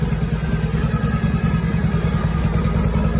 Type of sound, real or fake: real